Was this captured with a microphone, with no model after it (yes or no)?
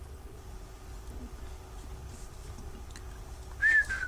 yes